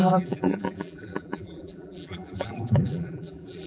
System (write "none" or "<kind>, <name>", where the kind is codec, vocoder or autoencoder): vocoder, BigVGAN v2